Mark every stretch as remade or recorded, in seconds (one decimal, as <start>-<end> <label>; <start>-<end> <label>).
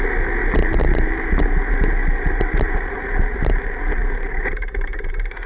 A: 0.0-2.0 recorded; 2.0-3.6 remade; 3.6-4.0 recorded; 4.0-5.1 remade; 5.1-5.5 recorded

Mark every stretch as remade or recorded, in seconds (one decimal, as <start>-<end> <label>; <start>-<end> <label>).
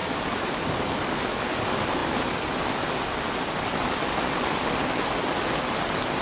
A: 0.0-6.2 recorded